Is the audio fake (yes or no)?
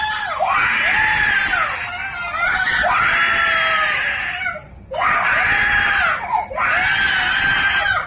no